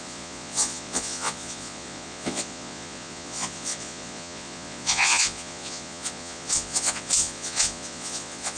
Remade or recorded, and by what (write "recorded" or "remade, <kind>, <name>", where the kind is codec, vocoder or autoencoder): remade, vocoder, Vocos